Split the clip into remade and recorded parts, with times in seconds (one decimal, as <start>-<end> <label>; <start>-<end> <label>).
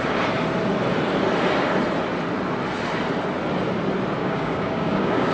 0.0-4.2 recorded; 4.2-5.3 remade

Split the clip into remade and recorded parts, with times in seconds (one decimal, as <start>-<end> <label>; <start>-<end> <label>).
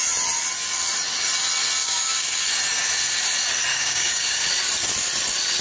0.0-1.8 recorded; 1.8-2.4 remade; 2.4-3.7 recorded; 3.7-4.5 remade; 4.5-5.6 recorded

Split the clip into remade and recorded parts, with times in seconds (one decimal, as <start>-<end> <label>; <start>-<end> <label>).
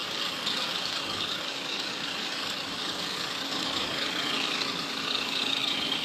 0.0-6.0 remade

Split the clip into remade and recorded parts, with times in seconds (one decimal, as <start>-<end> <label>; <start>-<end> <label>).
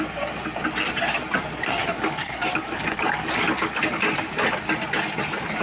0.0-1.8 recorded; 1.8-3.8 remade; 3.8-5.6 recorded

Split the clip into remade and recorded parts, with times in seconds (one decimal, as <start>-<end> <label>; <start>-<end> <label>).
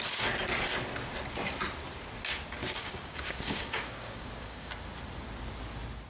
0.0-2.6 recorded; 2.6-4.7 remade; 4.7-6.1 recorded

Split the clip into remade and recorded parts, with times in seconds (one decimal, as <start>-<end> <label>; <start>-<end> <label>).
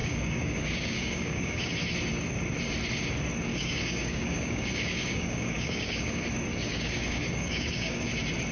0.0-1.7 remade; 1.7-3.5 recorded; 3.5-6.2 remade; 6.2-6.7 recorded; 6.7-8.1 remade; 8.1-8.5 recorded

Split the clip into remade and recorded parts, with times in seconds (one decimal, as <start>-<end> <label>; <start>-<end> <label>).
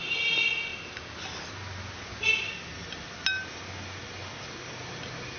0.0-5.4 recorded